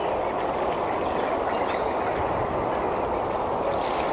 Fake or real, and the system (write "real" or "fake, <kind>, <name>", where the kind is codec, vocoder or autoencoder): real